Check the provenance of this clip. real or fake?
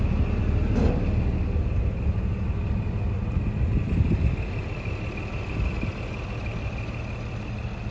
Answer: real